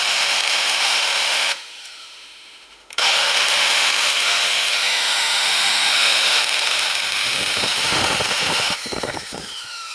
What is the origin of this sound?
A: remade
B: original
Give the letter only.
A